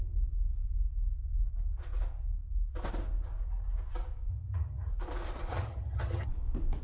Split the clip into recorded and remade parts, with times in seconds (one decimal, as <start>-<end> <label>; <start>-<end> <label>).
0.0-4.3 recorded; 4.3-4.9 remade; 4.9-5.5 recorded; 5.5-6.3 remade; 6.3-6.8 recorded